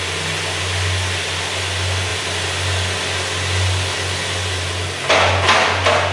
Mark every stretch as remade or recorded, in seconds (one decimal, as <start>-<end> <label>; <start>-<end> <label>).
0.0-6.1 recorded